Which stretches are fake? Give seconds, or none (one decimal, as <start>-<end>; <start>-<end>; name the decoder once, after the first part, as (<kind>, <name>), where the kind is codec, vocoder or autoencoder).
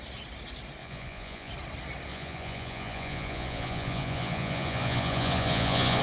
0.8-1.5 (vocoder, Vocos); 2.1-6.0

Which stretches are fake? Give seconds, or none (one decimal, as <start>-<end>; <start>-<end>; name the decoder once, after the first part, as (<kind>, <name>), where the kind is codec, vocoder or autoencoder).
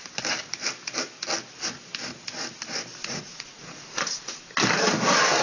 3.0-4.5 (vocoder, Vocos)